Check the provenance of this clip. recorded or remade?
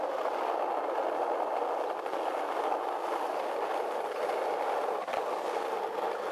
recorded